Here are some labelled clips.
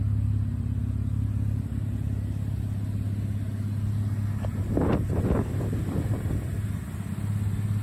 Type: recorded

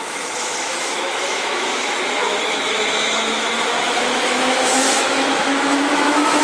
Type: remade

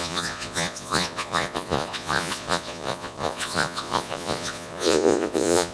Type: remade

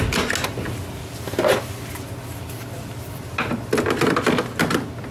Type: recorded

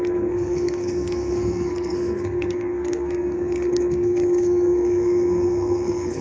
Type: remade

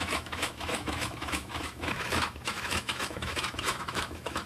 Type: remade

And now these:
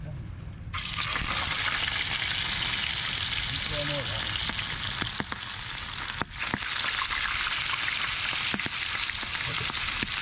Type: recorded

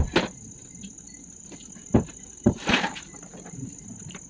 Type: recorded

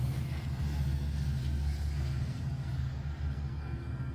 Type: remade